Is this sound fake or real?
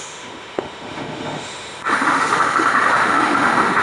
fake